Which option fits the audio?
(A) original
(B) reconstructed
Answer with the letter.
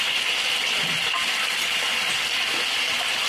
A